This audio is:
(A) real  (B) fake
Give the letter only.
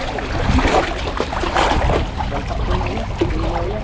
A